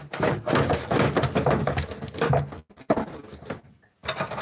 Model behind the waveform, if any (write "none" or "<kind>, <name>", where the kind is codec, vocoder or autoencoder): none